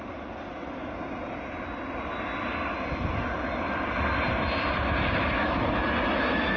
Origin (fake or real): real